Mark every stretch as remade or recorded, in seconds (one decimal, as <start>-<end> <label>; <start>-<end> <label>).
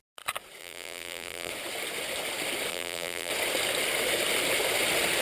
0.0-0.6 recorded; 0.6-1.5 remade; 1.5-2.7 recorded; 2.7-3.3 remade; 3.3-5.2 recorded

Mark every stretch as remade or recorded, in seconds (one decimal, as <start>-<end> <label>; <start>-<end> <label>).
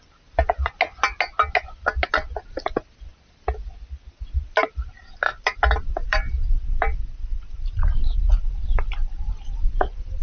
0.0-5.3 recorded; 5.3-9.3 remade; 9.3-10.2 recorded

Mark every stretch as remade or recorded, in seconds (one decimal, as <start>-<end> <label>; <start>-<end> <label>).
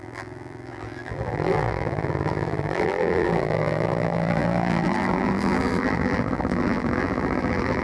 0.0-7.8 remade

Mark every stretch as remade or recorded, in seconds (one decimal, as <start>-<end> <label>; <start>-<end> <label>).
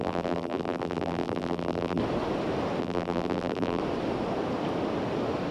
0.0-2.0 remade; 2.0-2.8 recorded; 2.8-3.8 remade; 3.8-5.5 recorded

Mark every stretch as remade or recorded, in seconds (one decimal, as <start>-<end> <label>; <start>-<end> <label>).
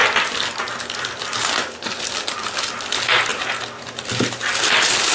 0.0-2.4 recorded; 2.4-2.9 remade; 2.9-3.3 recorded; 3.3-3.8 remade; 3.8-5.1 recorded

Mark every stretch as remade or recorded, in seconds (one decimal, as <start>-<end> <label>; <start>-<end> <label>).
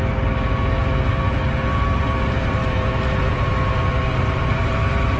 0.0-4.1 recorded; 4.1-4.8 remade; 4.8-5.2 recorded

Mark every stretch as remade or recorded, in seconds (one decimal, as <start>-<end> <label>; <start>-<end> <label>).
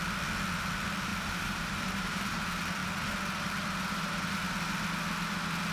0.0-1.1 recorded; 1.1-2.4 remade; 2.4-5.7 recorded